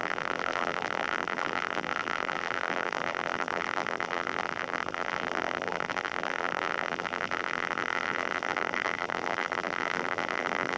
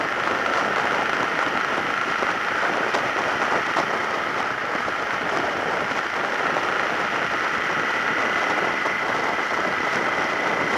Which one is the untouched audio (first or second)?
second